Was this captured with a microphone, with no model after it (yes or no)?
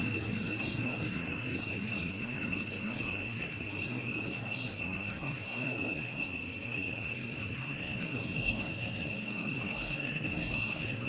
no